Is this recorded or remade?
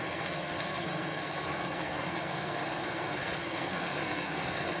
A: remade